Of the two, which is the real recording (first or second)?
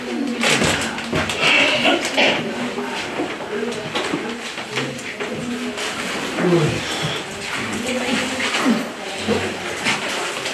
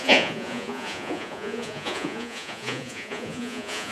first